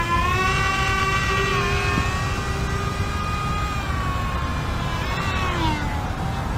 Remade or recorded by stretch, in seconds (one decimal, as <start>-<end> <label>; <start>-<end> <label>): 0.0-6.6 recorded